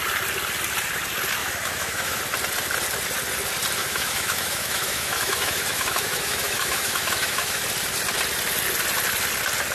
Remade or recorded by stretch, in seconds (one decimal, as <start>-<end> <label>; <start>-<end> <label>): 0.0-1.4 recorded; 1.4-2.2 remade; 2.2-3.8 recorded; 3.8-7.6 remade; 7.6-9.7 recorded